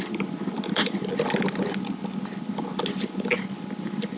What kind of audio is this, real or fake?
real